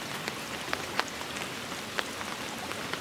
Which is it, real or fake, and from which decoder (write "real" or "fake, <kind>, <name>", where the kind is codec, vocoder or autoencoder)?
real